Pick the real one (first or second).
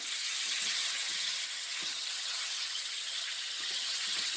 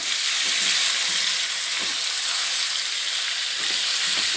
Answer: second